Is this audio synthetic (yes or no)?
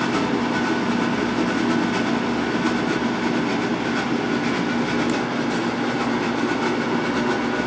no